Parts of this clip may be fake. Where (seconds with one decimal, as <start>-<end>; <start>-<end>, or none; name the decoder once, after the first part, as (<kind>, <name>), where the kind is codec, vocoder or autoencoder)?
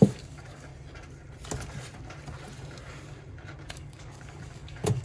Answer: 0.0-0.7 (codec, DAC); 3.7-5.0